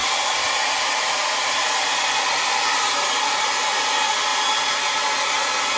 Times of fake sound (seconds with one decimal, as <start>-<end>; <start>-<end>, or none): 0.0-3.5